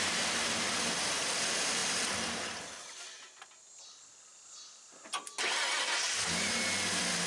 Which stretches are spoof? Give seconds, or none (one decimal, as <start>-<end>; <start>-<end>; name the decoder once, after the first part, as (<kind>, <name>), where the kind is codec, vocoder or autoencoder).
none

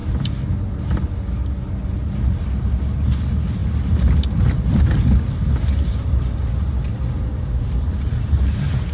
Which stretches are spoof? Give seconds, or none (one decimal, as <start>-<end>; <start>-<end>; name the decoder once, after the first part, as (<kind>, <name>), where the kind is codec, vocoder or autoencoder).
none

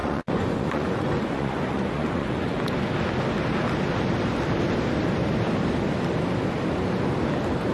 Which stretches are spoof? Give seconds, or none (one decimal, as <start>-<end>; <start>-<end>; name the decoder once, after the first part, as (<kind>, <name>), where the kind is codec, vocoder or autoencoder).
0.0-2.6 (vocoder, Vocos)